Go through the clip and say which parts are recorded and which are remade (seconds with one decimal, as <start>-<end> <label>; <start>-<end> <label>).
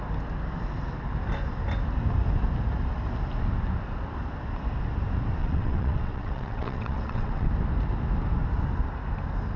0.0-5.4 recorded; 5.4-7.5 remade; 7.5-9.6 recorded